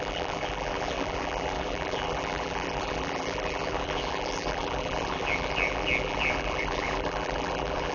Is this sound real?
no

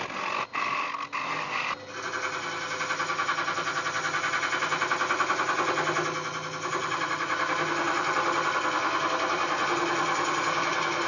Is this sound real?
yes